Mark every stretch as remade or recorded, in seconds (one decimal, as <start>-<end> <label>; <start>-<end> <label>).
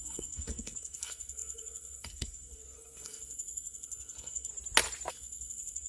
0.0-4.5 remade; 4.5-5.1 recorded; 5.1-5.9 remade